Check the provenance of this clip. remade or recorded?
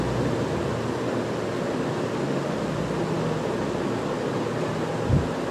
recorded